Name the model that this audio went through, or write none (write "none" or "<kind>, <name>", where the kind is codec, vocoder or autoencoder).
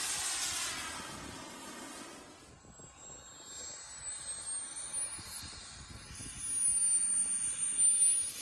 none